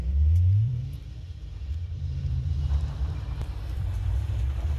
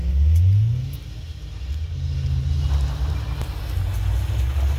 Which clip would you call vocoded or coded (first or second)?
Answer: first